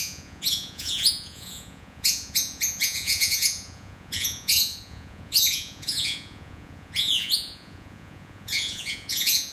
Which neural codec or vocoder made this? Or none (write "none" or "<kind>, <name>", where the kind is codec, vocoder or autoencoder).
vocoder, Vocos